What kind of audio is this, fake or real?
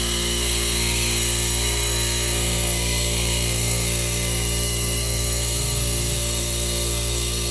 fake